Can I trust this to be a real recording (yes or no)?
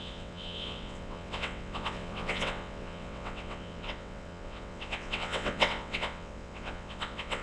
no